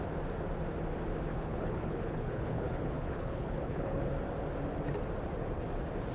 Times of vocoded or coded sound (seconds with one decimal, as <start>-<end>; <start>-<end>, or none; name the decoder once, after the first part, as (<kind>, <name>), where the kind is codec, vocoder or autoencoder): 1.3-4.1 (codec, HILCodec)